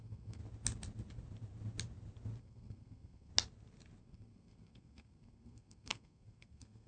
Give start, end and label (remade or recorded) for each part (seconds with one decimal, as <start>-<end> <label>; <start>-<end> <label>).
0.0-0.4 remade; 0.4-2.4 recorded; 2.4-3.3 remade; 3.3-4.0 recorded; 4.0-6.9 remade